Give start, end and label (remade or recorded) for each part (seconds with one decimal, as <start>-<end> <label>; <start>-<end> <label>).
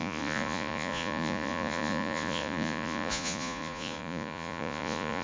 0.0-5.2 remade